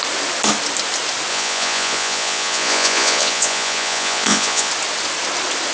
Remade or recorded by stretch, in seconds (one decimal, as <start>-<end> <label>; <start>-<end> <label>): 0.0-1.3 recorded; 1.3-4.7 remade; 4.7-5.7 recorded